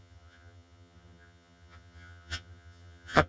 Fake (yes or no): yes